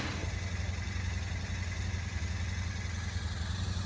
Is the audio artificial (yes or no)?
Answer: no